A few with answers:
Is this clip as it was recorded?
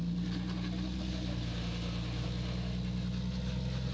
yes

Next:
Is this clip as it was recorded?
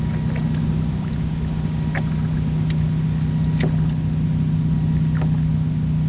yes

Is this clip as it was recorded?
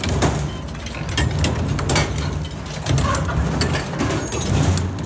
yes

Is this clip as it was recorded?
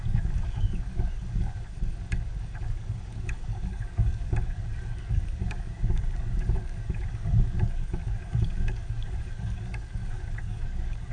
no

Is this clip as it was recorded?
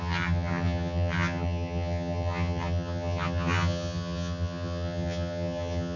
no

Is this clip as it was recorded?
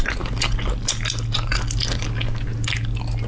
yes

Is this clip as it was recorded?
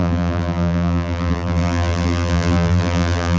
no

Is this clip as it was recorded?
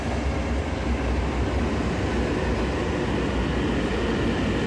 yes